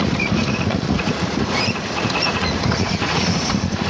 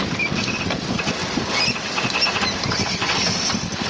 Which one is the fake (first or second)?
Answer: first